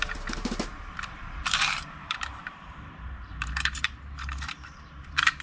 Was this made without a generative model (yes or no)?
no